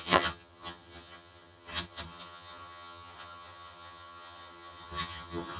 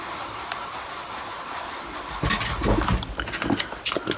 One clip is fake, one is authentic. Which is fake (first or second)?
first